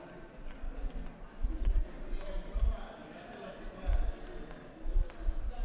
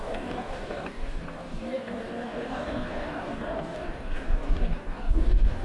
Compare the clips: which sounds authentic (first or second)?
first